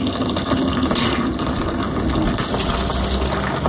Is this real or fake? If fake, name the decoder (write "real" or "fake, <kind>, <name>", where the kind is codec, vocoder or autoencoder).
real